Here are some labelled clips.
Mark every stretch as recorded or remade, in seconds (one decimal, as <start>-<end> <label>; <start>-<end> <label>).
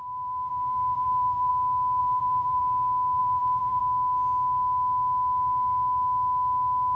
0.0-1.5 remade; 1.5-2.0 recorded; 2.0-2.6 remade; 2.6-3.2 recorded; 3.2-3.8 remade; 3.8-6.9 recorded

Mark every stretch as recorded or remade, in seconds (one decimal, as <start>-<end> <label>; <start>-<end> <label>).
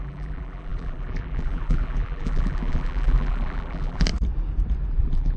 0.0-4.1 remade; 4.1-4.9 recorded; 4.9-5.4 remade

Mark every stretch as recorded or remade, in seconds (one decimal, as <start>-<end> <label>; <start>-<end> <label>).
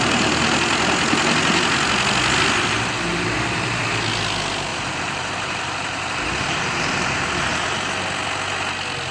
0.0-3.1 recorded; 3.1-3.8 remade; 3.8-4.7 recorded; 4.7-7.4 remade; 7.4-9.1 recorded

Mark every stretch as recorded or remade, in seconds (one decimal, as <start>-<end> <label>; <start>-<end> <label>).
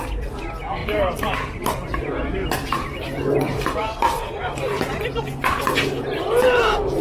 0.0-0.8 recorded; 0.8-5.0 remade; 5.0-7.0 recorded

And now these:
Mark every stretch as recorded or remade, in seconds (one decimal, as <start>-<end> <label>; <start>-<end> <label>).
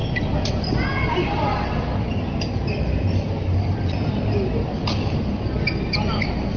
0.0-6.6 recorded